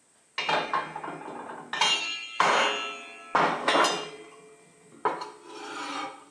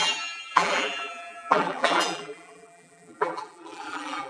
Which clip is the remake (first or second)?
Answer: second